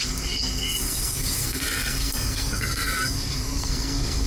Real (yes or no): no